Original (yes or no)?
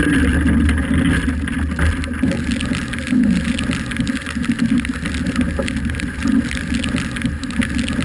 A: yes